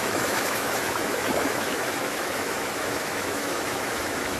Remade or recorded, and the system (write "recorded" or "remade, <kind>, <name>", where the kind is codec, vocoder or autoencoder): remade, autoencoder, DAC-VAE